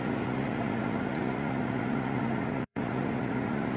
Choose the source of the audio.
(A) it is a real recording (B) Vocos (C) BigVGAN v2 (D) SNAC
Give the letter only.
B